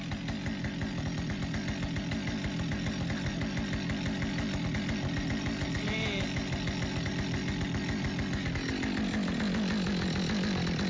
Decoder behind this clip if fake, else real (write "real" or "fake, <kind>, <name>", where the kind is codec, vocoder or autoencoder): real